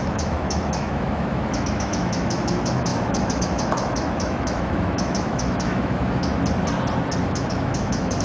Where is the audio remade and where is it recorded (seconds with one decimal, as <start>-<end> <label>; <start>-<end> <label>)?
0.0-6.3 remade; 6.3-7.2 recorded; 7.2-8.2 remade